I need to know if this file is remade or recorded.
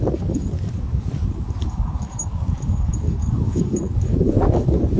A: remade